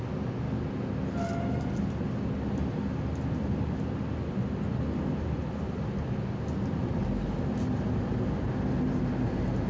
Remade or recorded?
recorded